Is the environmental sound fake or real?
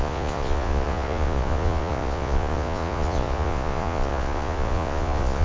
fake